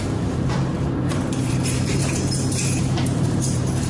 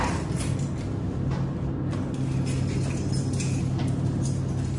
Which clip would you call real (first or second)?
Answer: second